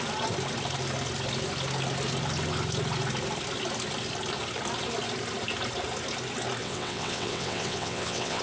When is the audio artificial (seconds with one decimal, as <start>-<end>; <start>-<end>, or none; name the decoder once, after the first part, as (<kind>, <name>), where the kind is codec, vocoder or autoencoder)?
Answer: 6.6-8.4 (vocoder, WaveNeXt)